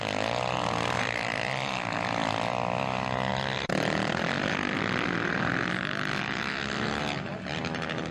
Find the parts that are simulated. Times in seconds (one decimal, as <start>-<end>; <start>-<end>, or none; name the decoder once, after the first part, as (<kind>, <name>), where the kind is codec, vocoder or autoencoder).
none